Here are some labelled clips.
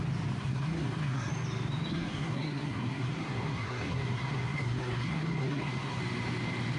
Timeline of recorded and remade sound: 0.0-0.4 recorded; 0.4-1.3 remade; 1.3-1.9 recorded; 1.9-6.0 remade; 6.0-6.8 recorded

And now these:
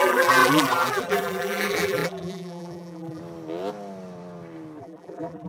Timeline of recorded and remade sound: 0.0-3.2 remade; 3.2-4.8 recorded; 4.8-5.5 remade

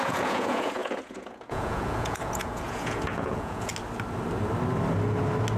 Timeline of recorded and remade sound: 0.0-3.7 remade; 3.7-5.6 recorded

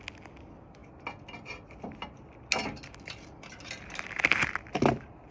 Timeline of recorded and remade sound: 0.0-5.3 recorded

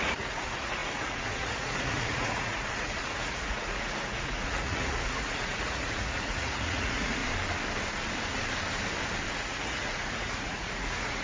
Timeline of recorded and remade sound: 0.0-7.2 remade; 7.2-9.3 recorded; 9.3-11.2 remade